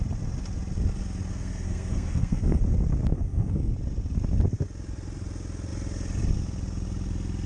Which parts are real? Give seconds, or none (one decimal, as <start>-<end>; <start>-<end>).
0.0-1.3; 2.6-3.1; 3.7-7.5